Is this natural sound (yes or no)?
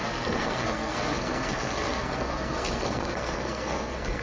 no